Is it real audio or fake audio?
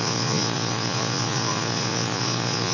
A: fake